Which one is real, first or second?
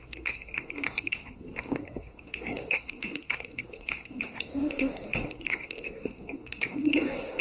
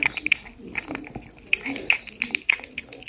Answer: second